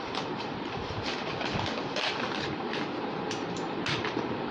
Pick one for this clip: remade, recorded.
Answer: remade